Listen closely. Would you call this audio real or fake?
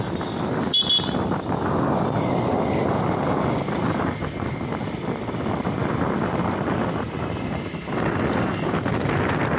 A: real